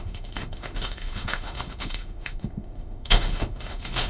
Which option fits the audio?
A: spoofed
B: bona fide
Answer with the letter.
A